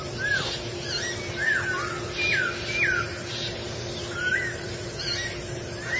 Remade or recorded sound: recorded